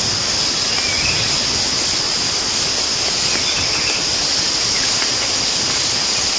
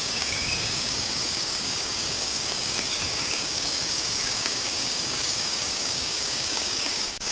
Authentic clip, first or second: first